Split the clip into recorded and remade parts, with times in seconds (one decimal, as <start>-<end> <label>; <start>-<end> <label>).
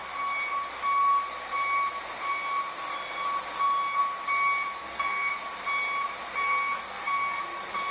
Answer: 0.0-4.8 recorded; 4.8-5.3 remade; 5.3-6.4 recorded; 6.4-7.4 remade; 7.4-7.9 recorded